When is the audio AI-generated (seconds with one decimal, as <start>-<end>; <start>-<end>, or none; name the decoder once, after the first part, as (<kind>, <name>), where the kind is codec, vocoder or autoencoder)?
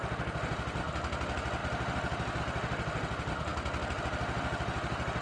none